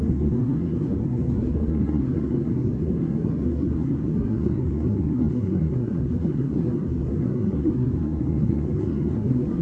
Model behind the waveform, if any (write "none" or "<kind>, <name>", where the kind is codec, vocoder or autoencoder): codec, SNAC